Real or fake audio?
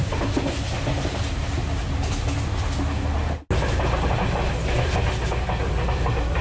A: real